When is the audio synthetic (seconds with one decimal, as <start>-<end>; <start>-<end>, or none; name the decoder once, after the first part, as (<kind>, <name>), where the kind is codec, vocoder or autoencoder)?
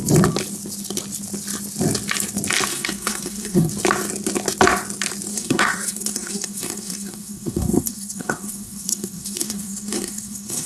2.7-3.7 (codec, SNAC); 5.3-10.7